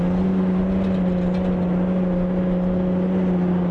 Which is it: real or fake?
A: real